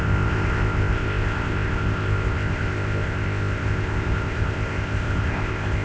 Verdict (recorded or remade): remade